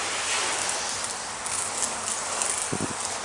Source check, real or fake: real